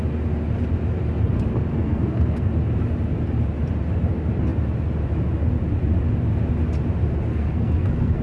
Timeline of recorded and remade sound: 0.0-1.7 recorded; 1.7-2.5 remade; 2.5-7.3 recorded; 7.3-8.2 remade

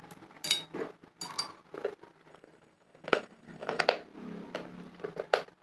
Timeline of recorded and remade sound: 0.0-2.3 recorded; 2.3-3.8 remade; 3.8-5.6 recorded

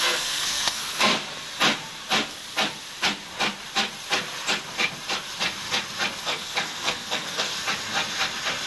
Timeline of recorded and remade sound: 0.0-1.1 remade; 1.1-6.2 recorded; 6.2-7.5 remade; 7.5-8.7 recorded